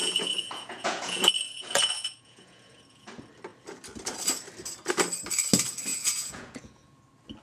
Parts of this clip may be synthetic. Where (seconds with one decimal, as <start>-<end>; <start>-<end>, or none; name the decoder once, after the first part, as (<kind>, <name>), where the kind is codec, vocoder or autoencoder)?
0.0-3.1 (vocoder, Vocos); 5.9-7.0